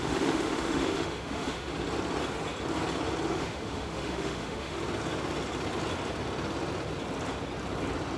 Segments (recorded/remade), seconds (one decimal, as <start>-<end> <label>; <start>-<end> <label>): 0.0-1.7 remade; 1.7-3.3 recorded; 3.3-4.8 remade; 4.8-8.2 recorded